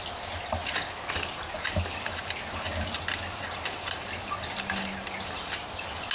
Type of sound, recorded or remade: recorded